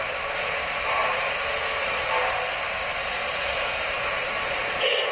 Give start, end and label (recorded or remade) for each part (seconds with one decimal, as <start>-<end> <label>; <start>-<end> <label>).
0.0-1.0 recorded; 1.0-4.1 remade; 4.1-5.1 recorded